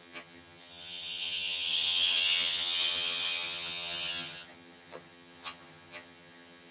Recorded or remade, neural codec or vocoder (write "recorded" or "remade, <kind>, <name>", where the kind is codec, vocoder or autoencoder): remade, vocoder, HiFi-GAN